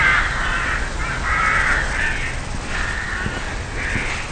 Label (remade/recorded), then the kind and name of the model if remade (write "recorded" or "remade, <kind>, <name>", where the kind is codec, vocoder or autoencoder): recorded